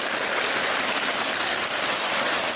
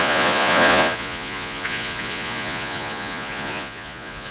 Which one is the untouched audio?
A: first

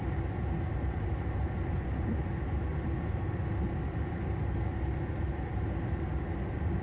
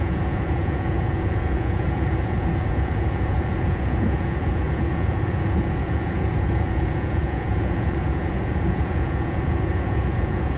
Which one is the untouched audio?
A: first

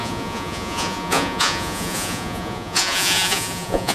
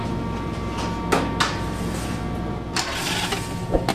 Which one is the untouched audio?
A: second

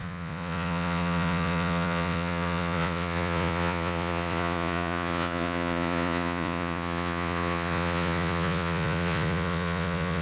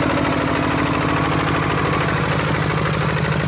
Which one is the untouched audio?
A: second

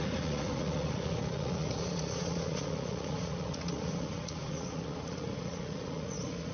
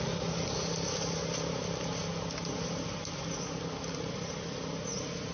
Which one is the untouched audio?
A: second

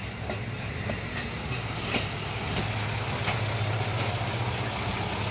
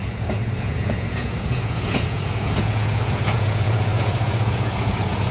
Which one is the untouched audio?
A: first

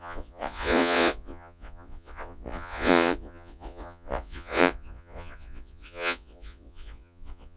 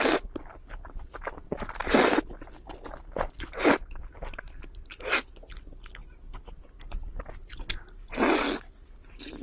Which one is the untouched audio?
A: second